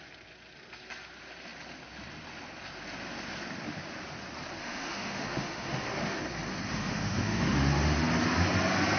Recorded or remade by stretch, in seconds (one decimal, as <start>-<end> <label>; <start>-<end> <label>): 0.0-4.6 recorded; 4.6-6.2 remade; 6.2-6.7 recorded; 6.7-7.7 remade; 7.7-9.0 recorded